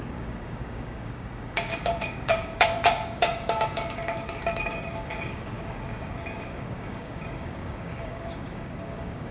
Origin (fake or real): fake